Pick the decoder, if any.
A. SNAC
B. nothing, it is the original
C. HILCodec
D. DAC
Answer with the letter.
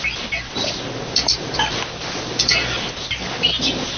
B